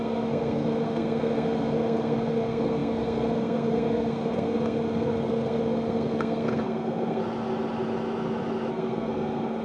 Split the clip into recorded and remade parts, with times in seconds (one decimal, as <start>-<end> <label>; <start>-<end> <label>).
0.0-7.2 remade; 7.2-8.7 recorded; 8.7-9.6 remade